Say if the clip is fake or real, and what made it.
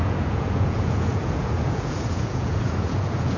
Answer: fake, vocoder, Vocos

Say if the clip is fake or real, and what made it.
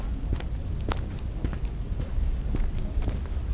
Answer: real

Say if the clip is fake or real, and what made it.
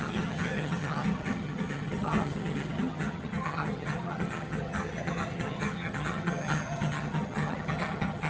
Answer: fake, vocoder, HiFi-GAN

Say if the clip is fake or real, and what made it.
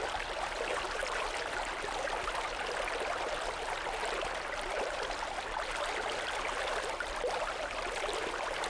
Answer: real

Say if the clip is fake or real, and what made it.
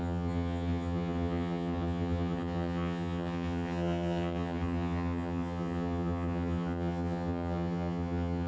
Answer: fake, vocoder, HiFi-GAN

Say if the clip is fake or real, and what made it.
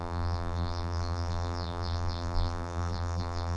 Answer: fake, vocoder, BigVGAN v2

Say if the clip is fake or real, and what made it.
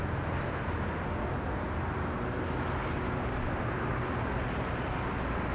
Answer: real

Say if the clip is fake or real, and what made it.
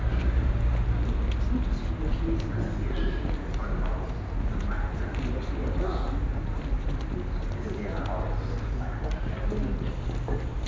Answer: real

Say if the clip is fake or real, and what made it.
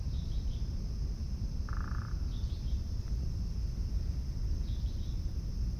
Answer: real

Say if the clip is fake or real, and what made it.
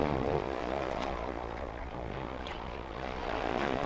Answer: fake, vocoder, Vocos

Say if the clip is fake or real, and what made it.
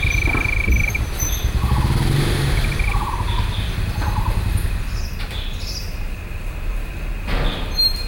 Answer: real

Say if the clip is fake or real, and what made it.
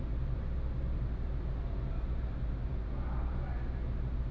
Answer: fake, vocoder, BigVGAN v2